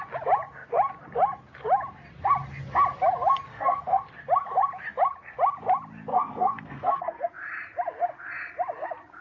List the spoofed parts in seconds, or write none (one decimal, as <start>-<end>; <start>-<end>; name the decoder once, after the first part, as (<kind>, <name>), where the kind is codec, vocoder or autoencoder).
3.5-4.0 (codec, SNAC); 6.1-7.3